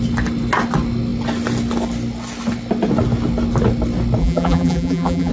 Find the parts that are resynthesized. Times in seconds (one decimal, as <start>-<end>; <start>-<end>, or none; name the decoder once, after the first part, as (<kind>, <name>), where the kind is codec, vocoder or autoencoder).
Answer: 4.2-5.3 (vocoder, BigVGAN v2)